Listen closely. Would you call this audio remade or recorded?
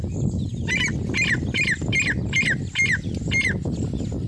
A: recorded